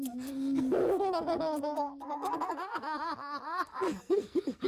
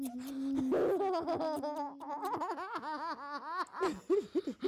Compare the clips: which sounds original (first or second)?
second